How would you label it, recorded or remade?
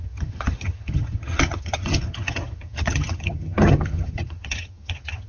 remade